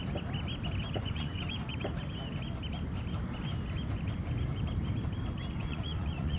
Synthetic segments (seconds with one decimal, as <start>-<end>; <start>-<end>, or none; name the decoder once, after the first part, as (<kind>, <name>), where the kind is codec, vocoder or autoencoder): 0.9-1.7 (vocoder, Vocos); 5.5-6.4